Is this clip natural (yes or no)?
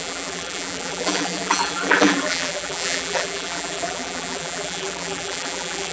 no